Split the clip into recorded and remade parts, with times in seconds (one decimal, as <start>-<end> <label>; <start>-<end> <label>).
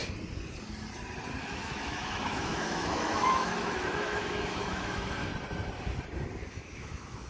0.0-1.4 recorded; 1.4-5.3 remade; 5.3-6.5 recorded; 6.5-7.3 remade